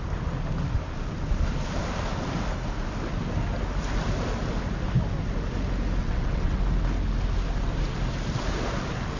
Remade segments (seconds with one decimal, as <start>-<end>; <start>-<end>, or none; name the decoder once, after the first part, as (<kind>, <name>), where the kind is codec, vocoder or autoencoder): 6.0-6.6 (vocoder, WaveNeXt)